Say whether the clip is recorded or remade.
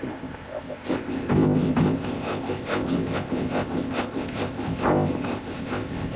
remade